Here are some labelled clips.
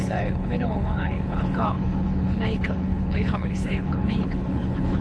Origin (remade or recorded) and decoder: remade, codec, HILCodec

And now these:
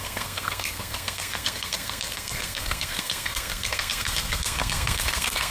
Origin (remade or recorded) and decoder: remade, codec, SNAC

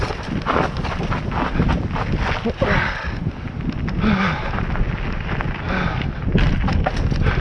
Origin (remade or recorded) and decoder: recorded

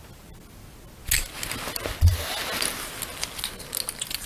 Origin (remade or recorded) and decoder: recorded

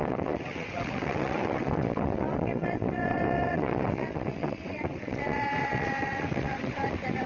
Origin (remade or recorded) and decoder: remade, vocoder, WaveNeXt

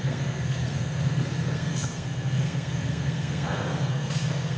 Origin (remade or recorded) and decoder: remade, codec, SNAC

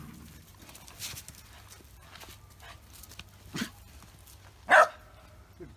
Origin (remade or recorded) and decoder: recorded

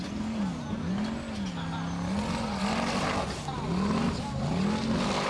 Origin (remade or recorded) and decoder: recorded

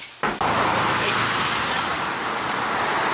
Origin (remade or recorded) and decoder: recorded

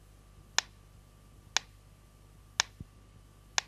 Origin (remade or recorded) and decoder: recorded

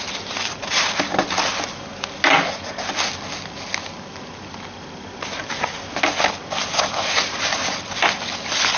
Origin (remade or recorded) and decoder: recorded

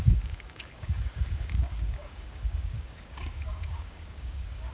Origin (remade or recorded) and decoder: remade, codec, DAC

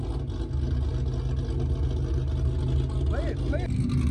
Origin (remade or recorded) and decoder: recorded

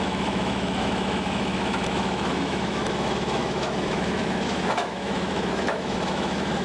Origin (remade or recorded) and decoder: remade, autoencoder, DAC-VAE